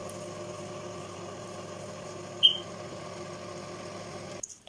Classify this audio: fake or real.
fake